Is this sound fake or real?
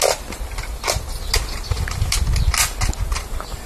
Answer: real